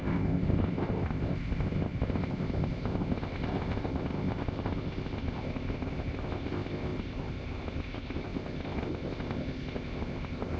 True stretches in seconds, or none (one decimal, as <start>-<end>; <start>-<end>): none